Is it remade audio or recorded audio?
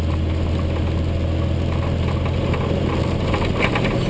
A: recorded